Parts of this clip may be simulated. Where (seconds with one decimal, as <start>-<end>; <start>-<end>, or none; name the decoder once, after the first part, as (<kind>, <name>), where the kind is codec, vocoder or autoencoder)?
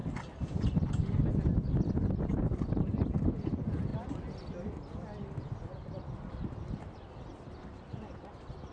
none